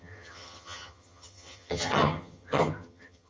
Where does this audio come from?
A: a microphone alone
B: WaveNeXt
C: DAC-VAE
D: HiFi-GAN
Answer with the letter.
D